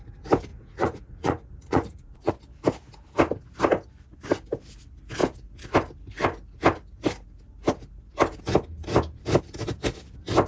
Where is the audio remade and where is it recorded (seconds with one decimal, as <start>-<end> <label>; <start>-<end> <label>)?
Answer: 0.0-0.5 recorded; 0.5-2.3 remade; 2.3-10.5 recorded